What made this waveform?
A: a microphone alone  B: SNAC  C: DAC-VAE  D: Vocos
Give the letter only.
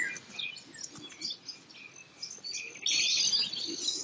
A